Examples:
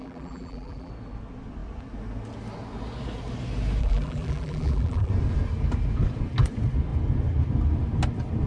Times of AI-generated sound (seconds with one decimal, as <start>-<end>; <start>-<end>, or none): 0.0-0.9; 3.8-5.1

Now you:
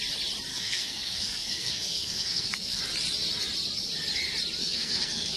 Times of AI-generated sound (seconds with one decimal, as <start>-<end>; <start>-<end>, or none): 0.5-2.8; 4.6-5.4

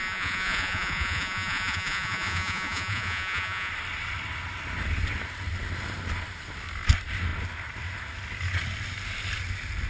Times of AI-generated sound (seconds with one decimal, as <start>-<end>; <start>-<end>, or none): 0.0-3.7

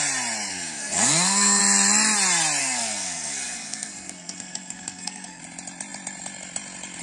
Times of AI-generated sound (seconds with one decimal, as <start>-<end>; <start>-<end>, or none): 0.5-1.6; 2.6-5.4

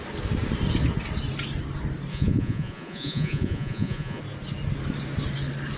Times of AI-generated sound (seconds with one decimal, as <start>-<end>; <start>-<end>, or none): 2.1-4.2

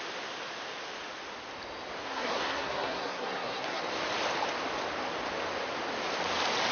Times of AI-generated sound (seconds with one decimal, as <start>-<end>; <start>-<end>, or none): 2.0-3.8

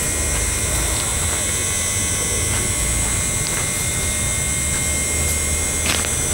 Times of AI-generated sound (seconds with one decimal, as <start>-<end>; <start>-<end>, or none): none